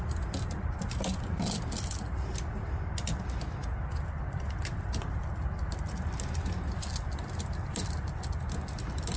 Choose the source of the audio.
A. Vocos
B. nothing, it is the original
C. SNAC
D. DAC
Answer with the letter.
B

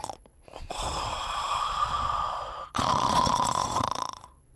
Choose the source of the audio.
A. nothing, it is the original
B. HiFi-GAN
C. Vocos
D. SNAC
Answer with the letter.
C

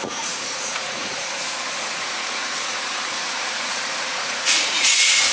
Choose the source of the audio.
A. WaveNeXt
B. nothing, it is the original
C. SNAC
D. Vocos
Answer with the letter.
D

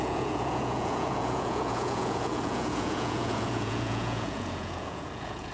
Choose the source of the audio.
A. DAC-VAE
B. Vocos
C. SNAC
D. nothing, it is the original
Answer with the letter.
B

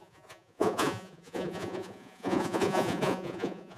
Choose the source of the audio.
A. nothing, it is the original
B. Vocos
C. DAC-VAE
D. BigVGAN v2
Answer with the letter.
B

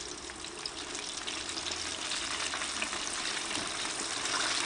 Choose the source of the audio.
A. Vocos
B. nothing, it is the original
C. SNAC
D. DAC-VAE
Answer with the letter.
B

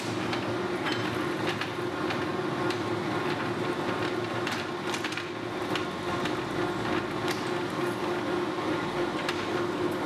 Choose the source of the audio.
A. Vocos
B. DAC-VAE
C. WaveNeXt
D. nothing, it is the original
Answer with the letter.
D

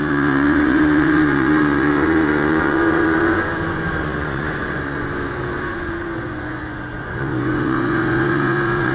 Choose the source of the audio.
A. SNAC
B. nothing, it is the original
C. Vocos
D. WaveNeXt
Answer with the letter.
C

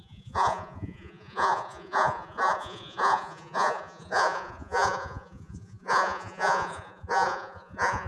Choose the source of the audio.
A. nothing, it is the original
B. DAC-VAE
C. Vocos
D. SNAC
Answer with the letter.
C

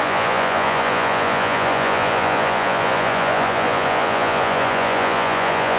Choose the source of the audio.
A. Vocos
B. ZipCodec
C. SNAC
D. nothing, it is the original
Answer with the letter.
A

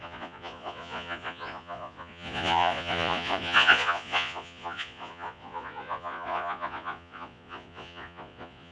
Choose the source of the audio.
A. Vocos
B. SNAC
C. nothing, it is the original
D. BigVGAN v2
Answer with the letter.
A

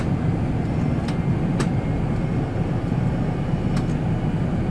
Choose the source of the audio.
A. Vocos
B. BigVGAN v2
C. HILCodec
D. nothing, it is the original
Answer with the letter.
D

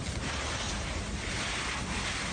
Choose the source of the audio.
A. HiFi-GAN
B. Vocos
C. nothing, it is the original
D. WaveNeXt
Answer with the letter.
C